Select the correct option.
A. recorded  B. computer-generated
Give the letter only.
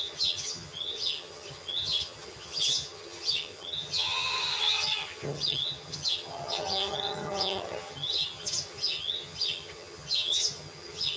B